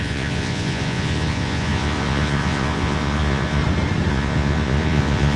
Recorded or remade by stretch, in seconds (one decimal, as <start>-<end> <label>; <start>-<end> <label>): 0.0-3.6 remade; 3.6-4.1 recorded; 4.1-5.4 remade